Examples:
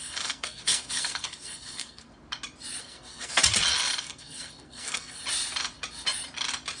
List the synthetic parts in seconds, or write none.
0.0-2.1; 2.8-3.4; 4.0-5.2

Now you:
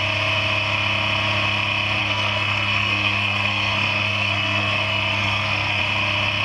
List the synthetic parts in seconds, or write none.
2.0-5.8

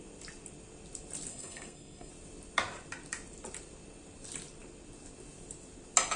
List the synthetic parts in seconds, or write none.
1.3-2.1

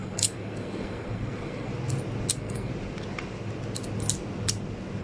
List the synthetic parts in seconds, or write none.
0.0-1.7; 2.3-2.7